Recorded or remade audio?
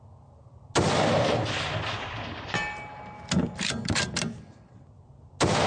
recorded